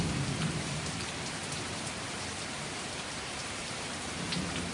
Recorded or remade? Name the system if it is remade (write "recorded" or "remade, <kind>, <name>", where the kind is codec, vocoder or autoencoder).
remade, vocoder, BigVGAN v2